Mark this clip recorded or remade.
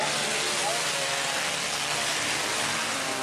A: recorded